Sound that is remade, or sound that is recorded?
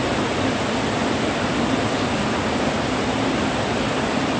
recorded